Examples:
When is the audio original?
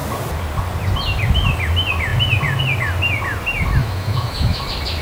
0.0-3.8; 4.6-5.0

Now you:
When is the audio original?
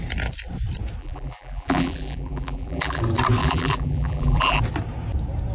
0.0-1.0; 3.0-3.4; 4.6-5.5